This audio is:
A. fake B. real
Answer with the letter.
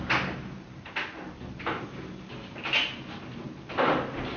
B